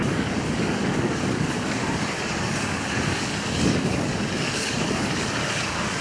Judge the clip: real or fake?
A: fake